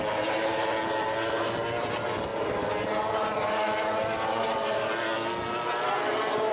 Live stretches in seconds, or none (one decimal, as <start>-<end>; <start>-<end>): 0.0-6.5